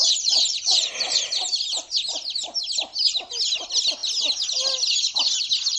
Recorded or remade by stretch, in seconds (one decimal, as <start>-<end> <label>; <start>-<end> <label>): 0.0-1.3 remade; 1.3-5.8 recorded